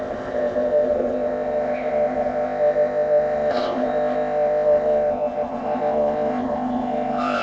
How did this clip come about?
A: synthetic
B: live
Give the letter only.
A